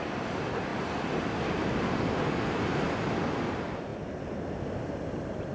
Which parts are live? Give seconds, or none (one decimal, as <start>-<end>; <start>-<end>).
0.0-2.7; 3.3-3.9